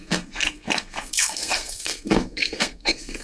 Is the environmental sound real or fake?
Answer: fake